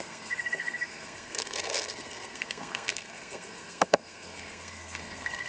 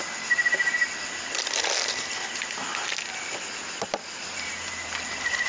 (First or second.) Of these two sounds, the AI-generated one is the first